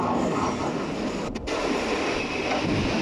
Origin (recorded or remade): recorded